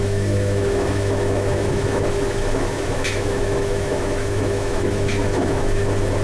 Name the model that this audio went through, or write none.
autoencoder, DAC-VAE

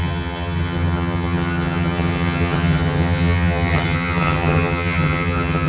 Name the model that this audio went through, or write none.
vocoder, HiFi-GAN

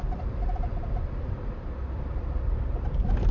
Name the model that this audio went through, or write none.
vocoder, BigVGAN v2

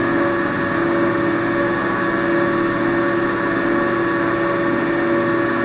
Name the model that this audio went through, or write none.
none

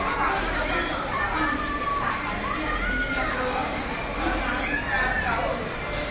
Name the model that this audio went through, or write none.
none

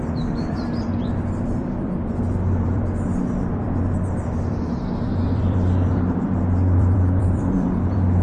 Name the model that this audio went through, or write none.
vocoder, BigVGAN v2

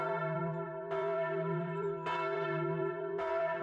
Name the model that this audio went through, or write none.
vocoder, BigVGAN v2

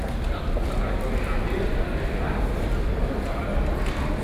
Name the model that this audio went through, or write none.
none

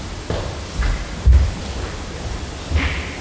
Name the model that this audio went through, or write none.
none